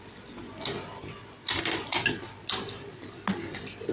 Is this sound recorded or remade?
recorded